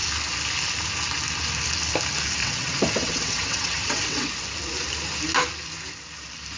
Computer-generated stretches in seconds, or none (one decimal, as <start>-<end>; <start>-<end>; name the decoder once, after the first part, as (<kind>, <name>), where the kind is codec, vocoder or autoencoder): 2.4-4.3 (vocoder, WaveNeXt)

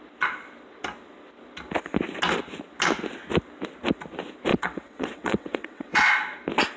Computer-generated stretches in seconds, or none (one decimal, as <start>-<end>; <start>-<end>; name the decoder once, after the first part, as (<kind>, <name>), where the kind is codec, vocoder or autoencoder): 4.5-6.1 (vocoder, WaveNeXt)

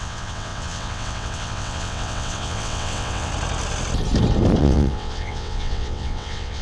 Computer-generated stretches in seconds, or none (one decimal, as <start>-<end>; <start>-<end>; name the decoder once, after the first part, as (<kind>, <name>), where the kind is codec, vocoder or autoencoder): 0.0-3.3 (vocoder, WaveNeXt); 4.6-6.6

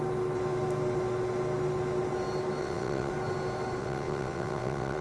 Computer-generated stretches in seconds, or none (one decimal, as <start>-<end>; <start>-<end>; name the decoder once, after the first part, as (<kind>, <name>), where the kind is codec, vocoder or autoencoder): 2.6-3.1 (vocoder, WaveNeXt); 3.8-5.0

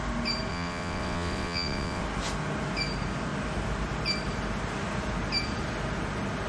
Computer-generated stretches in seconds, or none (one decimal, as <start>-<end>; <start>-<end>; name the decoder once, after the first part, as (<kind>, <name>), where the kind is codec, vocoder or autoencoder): 0.5-2.0 (vocoder, WaveNeXt)

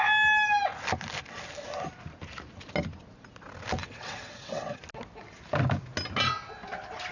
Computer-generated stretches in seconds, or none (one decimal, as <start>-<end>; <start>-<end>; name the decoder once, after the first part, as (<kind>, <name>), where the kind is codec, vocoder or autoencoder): 3.8-4.8 (vocoder, WaveNeXt)